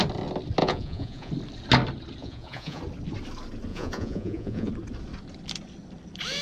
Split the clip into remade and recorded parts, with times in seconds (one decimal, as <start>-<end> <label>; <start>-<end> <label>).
0.0-0.6 recorded; 0.6-1.3 remade; 1.3-2.2 recorded; 2.2-2.8 remade; 2.8-3.7 recorded; 3.7-4.7 remade; 4.7-6.4 recorded